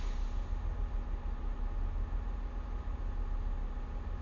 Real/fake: real